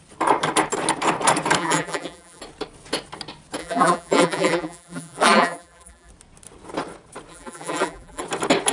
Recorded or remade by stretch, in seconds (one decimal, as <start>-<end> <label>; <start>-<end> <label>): 0.0-1.6 recorded; 1.6-2.4 remade; 2.4-3.6 recorded; 3.6-6.1 remade; 6.1-7.3 recorded; 7.3-8.2 remade; 8.2-8.7 recorded